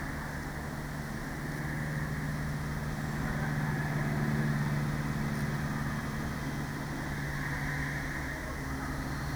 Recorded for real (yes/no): yes